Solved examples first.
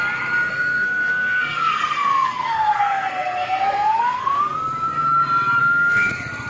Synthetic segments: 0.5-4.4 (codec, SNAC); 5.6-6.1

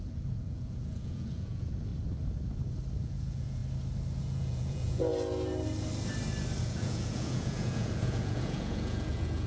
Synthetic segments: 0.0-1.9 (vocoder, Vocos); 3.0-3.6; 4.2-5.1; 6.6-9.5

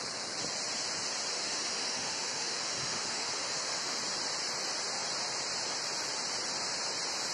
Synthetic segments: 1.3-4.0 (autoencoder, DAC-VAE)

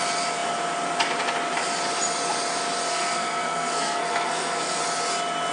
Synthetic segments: 2.9-4.8 (codec, SNAC)

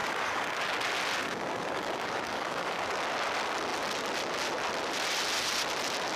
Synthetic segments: 0.0-0.6 (codec, DAC); 1.2-2.9

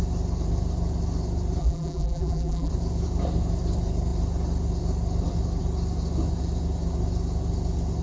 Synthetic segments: 1.6-2.7 (vocoder, BigVGAN v2)

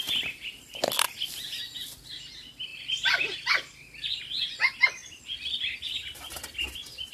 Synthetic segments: none

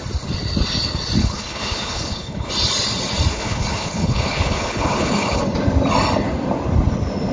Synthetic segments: 1.2-2.5 (codec, HILCodec); 3.3-5.4